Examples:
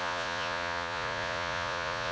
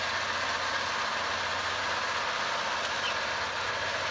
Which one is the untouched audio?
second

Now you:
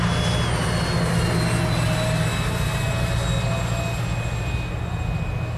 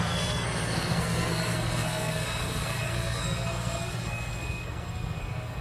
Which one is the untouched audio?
first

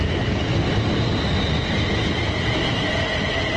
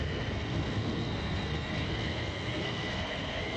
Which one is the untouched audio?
first